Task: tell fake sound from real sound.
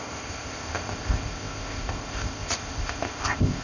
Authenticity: fake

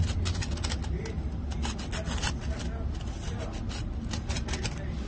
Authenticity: real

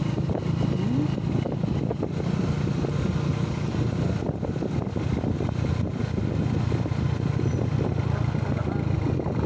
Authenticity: real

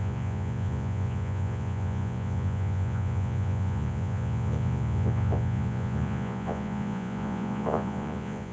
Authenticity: fake